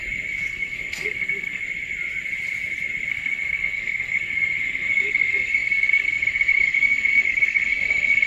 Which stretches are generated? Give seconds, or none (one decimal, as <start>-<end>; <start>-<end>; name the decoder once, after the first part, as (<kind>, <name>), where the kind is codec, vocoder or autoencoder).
0.5-1.6 (codec, SNAC); 3.1-8.3